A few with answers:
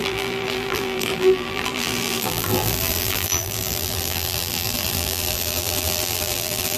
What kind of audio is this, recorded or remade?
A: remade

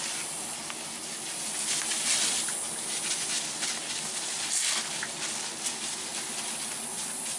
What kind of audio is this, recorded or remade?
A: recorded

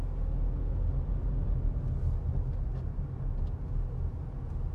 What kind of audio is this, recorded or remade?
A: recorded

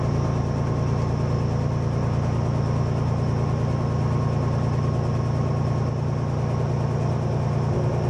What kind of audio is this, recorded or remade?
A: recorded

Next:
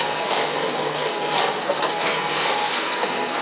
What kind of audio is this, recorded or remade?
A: remade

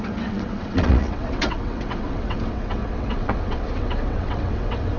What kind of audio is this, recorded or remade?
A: remade